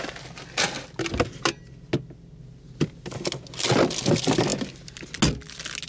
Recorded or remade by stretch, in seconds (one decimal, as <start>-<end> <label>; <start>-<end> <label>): 0.0-5.9 recorded

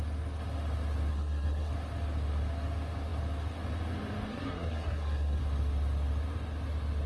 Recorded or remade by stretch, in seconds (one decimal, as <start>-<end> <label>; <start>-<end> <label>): 0.0-1.1 recorded; 1.1-1.7 remade; 1.7-4.3 recorded; 4.3-5.4 remade; 5.4-7.1 recorded

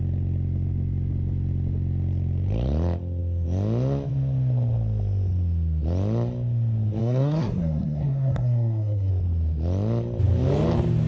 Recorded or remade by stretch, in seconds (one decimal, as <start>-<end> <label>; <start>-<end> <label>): 0.0-7.0 recorded; 7.0-9.1 remade; 9.1-11.1 recorded

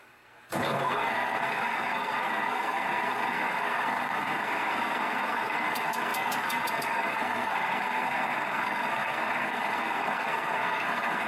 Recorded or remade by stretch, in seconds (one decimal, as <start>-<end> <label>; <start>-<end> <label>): 0.0-11.3 remade

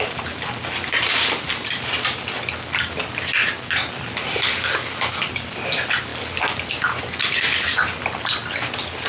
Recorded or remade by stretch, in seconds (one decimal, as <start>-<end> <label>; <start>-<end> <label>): 0.0-9.1 recorded